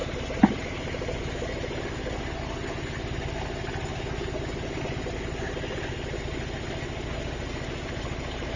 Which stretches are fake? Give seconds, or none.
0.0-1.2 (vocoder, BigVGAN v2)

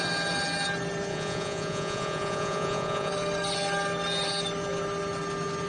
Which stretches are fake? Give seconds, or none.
1.1-3.1 (vocoder, Vocos)

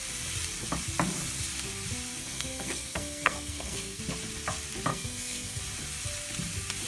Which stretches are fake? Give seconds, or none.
2.2-4.0 (codec, SNAC); 4.9-5.6

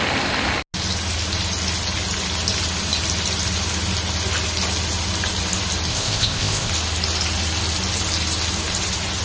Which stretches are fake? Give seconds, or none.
5.9-6.7 (codec, ZipCodec)

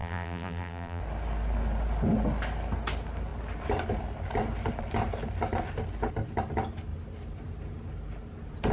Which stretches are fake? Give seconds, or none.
0.0-1.0 (vocoder, BigVGAN v2)

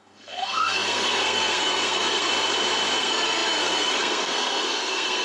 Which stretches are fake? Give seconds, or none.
0.0-2.3 (codec, SNAC); 3.0-5.2